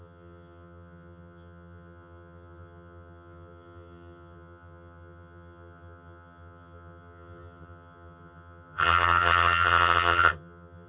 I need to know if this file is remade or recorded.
remade